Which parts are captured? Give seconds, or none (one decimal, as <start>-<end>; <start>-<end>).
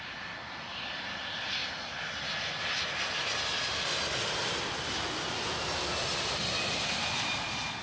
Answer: 0.0-7.8